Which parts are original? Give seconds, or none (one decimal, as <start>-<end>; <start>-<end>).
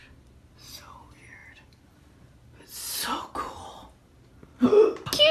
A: 0.0-5.3